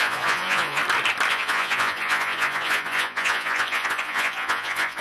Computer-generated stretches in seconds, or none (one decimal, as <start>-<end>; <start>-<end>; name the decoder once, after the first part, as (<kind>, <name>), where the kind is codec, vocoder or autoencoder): 0.0-0.8 (vocoder, Vocos); 1.3-5.0